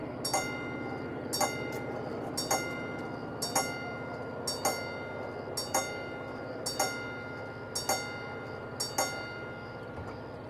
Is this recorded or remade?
recorded